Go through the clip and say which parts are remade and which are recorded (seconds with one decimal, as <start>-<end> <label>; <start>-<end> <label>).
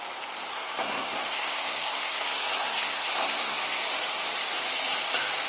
0.0-0.5 recorded; 0.5-3.8 remade; 3.8-5.5 recorded